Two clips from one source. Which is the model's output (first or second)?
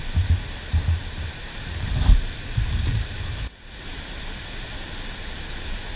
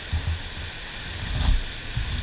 first